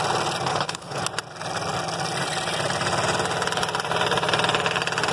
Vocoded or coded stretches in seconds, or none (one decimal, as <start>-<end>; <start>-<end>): 0.5-1.0